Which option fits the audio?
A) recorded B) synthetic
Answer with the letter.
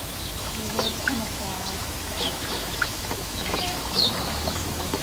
B